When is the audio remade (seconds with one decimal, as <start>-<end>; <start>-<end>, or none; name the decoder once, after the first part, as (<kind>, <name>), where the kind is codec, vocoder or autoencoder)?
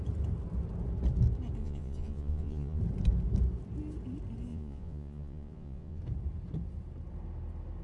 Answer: 1.6-2.8 (vocoder, Vocos); 4.5-6.0